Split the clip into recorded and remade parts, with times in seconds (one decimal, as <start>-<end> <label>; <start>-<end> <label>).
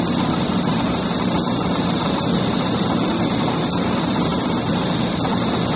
0.0-5.8 recorded